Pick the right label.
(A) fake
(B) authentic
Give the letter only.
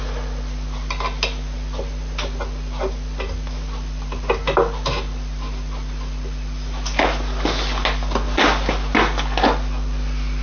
B